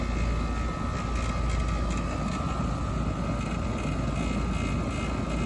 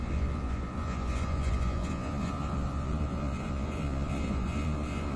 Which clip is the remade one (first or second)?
second